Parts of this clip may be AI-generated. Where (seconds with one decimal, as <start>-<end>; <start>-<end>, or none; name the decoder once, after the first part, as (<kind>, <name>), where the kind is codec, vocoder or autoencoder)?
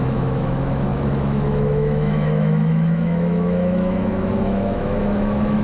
0.0-5.6 (autoencoder, DAC-VAE)